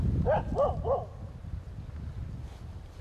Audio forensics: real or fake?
real